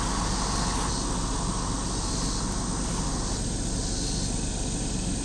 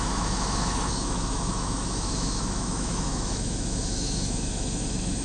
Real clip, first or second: first